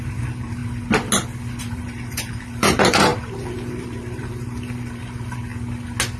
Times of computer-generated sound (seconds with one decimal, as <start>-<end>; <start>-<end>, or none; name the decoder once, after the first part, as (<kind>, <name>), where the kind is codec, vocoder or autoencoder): 0.0-0.6 (vocoder, BigVGAN v2); 1.6-5.5